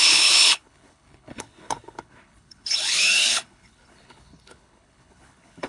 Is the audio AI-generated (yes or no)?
yes